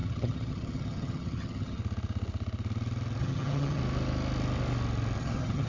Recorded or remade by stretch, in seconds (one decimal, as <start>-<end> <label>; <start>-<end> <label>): 0.0-1.8 remade; 1.8-3.2 recorded; 3.2-3.8 remade; 3.8-5.2 recorded; 5.2-5.7 remade